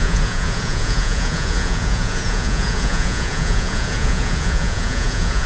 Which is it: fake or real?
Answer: fake